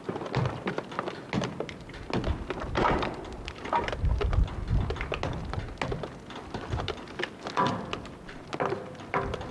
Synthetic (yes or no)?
no